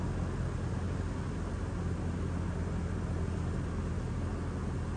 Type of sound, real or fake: real